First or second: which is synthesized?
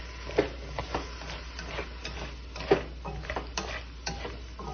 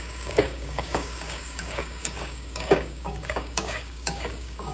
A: second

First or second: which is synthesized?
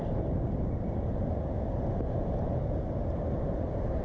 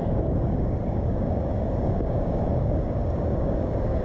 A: second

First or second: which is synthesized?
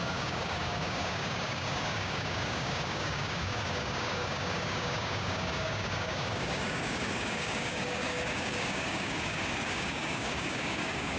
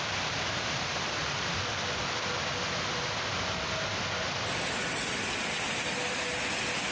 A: first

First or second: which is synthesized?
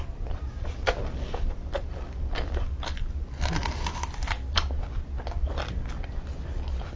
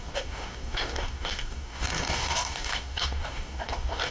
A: second